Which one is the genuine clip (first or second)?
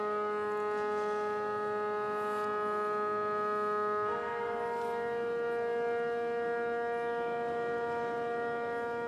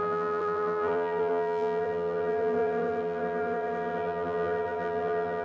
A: first